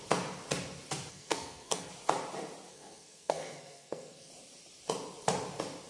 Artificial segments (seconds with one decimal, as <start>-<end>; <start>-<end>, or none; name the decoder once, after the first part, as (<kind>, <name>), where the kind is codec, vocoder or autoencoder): 1.1-1.9 (codec, SNAC); 2.7-4.3